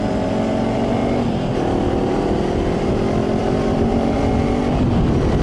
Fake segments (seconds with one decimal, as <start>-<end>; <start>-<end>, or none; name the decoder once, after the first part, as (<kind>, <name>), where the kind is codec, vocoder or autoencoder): 1.0-2.9 (vocoder, BigVGAN v2); 3.4-4.6